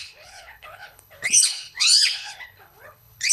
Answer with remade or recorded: remade